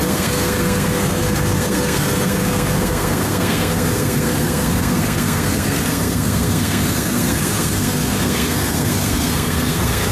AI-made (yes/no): yes